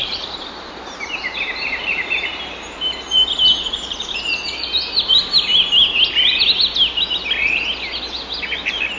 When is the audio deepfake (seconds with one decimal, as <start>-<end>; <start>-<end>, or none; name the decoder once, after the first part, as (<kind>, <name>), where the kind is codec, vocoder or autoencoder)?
0.0-4.9 (vocoder, BigVGAN v2)